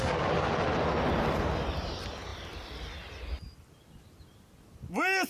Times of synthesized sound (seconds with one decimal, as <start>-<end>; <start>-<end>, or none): 2.3-2.9

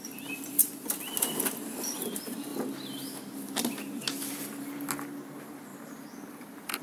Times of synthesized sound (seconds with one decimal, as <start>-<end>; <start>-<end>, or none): 5.7-6.8

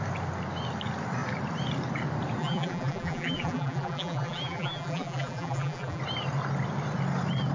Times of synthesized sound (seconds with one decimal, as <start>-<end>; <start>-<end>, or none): 2.4-6.0

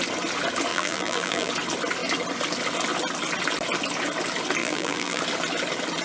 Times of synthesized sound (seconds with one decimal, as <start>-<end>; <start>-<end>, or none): 0.7-1.5; 4.6-5.2

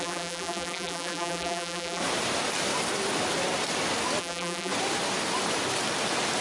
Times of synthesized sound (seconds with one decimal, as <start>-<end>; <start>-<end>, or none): 0.0-2.0; 4.2-4.7